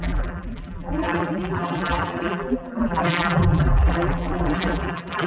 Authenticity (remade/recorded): remade